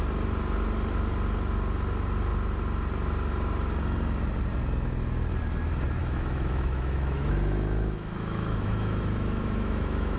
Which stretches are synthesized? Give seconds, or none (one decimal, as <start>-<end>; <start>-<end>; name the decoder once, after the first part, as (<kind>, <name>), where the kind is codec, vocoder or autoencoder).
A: 6.0-10.2 (autoencoder, DAC-VAE)